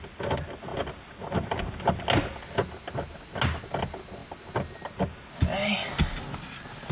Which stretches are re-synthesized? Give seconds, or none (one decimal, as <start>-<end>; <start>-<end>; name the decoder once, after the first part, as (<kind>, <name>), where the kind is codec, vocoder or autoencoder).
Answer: none